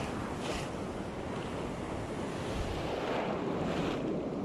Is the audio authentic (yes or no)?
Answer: yes